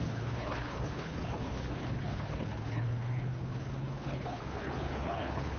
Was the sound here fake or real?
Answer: fake